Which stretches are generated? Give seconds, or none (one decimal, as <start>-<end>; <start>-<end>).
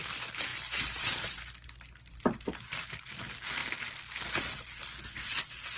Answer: none